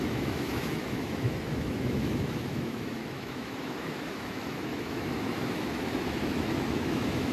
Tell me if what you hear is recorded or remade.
remade